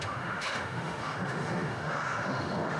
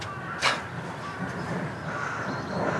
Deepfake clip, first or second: first